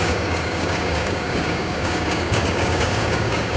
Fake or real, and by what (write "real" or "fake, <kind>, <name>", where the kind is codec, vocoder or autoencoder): fake, codec, DAC